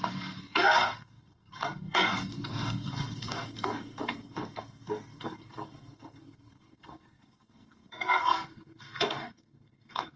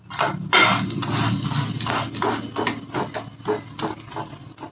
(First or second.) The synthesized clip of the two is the first